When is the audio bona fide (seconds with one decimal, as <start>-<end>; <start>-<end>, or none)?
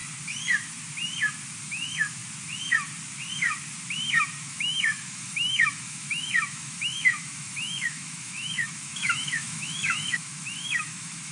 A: 0.0-1.6; 2.2-4.4